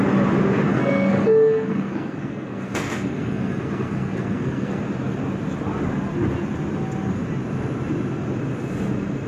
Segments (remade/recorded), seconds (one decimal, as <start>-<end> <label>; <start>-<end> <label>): 0.0-0.7 recorded; 0.7-4.8 remade; 4.8-9.3 recorded